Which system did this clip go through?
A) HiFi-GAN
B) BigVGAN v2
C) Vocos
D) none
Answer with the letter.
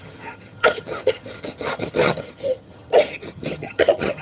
A